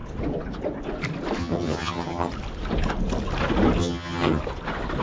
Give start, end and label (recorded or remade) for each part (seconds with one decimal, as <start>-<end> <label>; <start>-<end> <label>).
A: 0.0-1.4 recorded; 1.4-2.3 remade; 2.3-3.8 recorded; 3.8-4.4 remade; 4.4-5.0 recorded